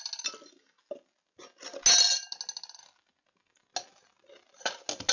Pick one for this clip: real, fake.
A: real